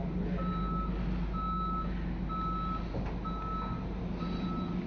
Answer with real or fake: real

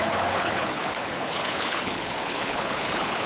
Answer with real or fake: fake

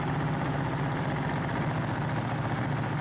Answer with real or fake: real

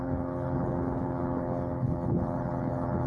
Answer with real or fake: fake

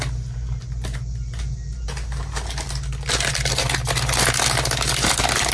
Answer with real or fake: real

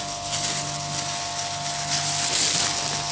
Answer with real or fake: real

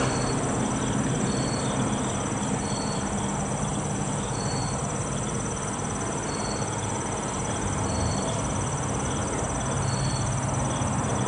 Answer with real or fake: real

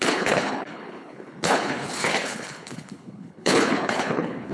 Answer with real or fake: fake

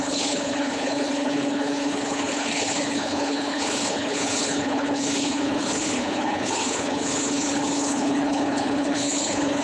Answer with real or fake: fake